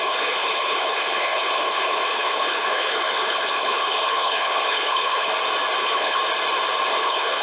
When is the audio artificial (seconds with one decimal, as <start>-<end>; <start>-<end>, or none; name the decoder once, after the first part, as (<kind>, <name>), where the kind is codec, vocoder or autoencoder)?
0.0-5.3 (codec, HILCodec); 5.8-6.2; 6.9-7.4

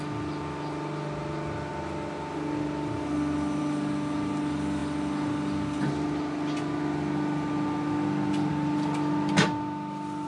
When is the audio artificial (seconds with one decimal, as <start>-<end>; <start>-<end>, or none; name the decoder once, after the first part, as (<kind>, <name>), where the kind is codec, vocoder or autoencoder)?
none

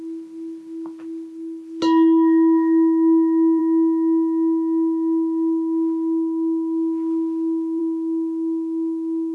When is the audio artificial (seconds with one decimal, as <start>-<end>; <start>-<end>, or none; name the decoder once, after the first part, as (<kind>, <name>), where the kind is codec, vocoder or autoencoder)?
none

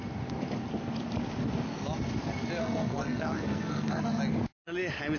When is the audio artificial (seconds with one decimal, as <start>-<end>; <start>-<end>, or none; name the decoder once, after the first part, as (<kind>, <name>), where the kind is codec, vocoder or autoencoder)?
2.6-4.2 (codec, SNAC)

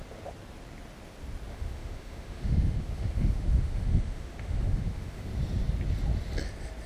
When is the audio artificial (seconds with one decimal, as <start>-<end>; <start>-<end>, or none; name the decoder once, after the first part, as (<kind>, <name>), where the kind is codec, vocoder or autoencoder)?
1.5-5.3 (autoencoder, DAC-VAE)

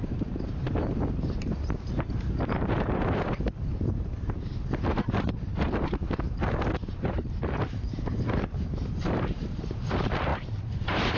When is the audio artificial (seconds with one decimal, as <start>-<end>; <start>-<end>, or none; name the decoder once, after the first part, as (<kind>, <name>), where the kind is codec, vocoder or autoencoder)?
0.0-11.2 (vocoder, BigVGAN v2)